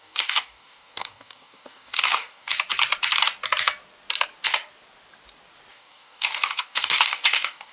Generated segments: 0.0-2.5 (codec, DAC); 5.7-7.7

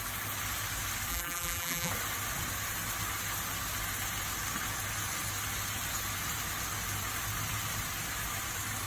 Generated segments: 1.1-1.9 (vocoder, BigVGAN v2)

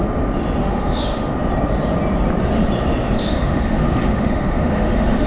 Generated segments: 0.6-1.3 (autoencoder, DAC-VAE); 3.2-5.3

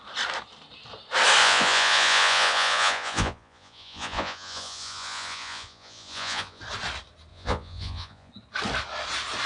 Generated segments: 1.4-6.6 (vocoder, Vocos); 7.3-8.3

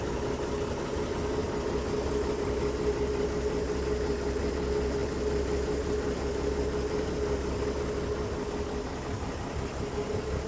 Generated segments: none

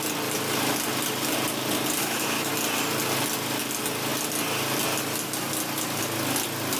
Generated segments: 2.0-2.5 (autoencoder, DAC-VAE)

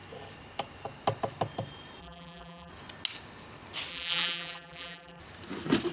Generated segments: 2.0-2.7 (vocoder, BigVGAN v2); 3.9-5.2

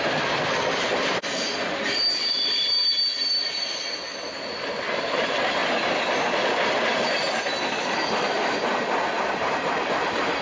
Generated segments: none